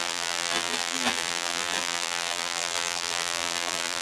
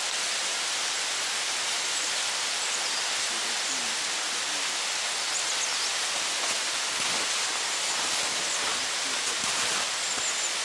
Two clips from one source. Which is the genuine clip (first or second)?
second